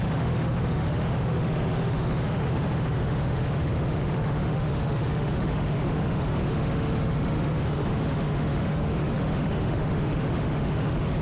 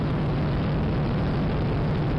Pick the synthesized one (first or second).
first